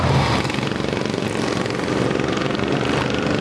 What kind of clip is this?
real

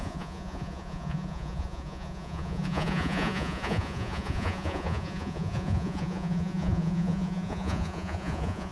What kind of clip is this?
fake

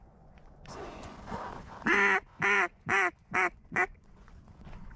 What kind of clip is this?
fake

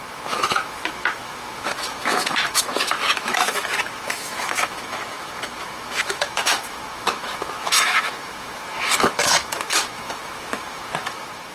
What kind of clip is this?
fake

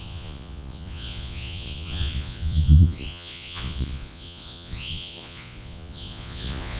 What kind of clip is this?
fake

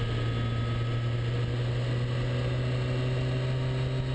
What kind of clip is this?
real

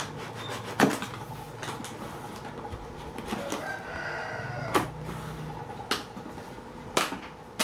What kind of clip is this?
real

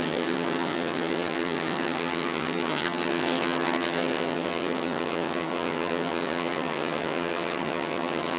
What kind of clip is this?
fake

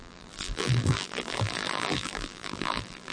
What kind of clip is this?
fake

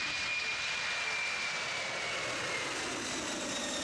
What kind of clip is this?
real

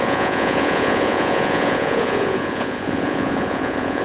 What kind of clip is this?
fake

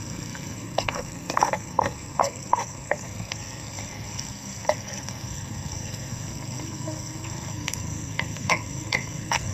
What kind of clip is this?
fake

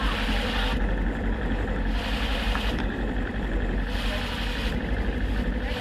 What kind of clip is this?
real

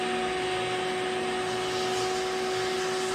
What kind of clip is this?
real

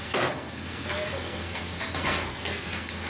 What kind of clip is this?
fake